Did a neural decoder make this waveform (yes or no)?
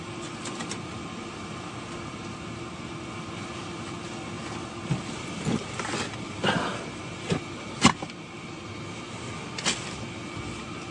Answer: no